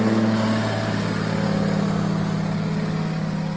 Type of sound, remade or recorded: recorded